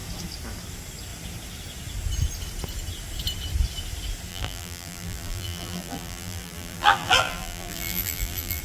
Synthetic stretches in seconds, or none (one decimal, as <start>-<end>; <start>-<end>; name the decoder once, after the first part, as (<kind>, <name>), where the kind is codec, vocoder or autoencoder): 4.3-8.6 (vocoder, BigVGAN v2)

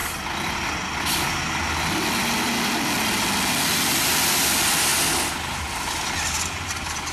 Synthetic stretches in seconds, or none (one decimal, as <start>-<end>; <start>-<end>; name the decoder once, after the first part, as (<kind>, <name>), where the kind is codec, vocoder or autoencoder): none

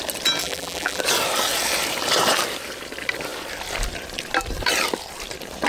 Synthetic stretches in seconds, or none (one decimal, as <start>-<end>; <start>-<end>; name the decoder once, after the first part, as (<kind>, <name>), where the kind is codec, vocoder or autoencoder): 0.4-1.0 (vocoder, BigVGAN v2)